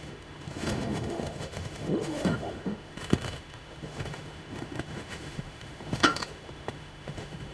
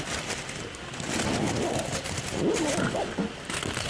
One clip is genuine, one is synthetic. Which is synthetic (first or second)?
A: first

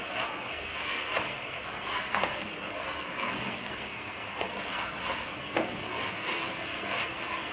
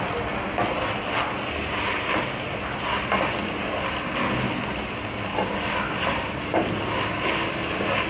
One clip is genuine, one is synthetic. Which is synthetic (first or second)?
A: first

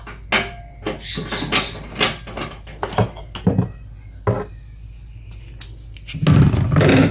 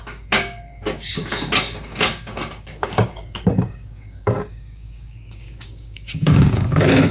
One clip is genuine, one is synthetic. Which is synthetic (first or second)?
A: second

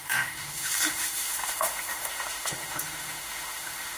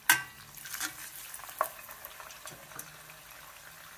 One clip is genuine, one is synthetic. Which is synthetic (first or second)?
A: first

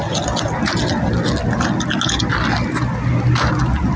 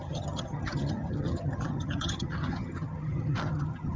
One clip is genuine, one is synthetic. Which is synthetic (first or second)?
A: second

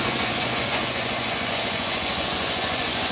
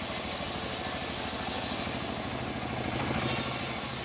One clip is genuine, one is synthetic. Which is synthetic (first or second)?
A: first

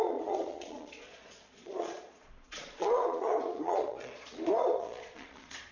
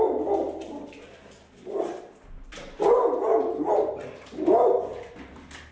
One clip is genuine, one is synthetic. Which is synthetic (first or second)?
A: first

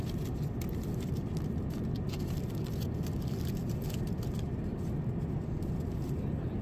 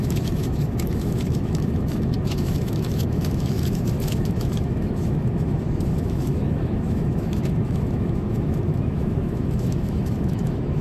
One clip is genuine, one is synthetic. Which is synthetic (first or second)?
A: second